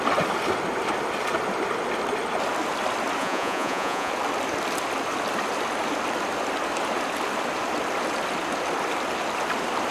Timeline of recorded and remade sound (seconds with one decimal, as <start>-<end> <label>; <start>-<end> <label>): 0.0-3.2 recorded; 3.2-4.1 remade; 4.1-9.9 recorded